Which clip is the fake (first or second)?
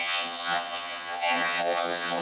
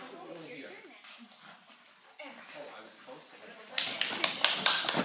first